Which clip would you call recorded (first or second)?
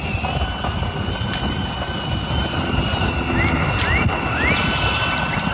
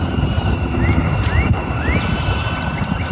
first